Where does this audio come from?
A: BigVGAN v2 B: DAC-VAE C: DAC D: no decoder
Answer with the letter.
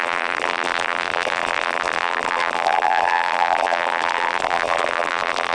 A